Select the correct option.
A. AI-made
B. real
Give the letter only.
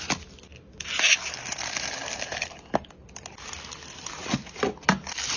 B